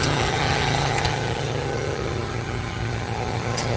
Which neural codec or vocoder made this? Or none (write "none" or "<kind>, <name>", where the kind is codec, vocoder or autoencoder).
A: vocoder, HiFi-GAN